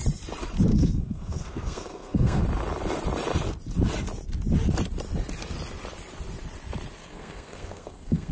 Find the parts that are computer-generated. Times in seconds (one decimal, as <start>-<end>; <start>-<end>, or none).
0.7-2.4; 7.0-8.3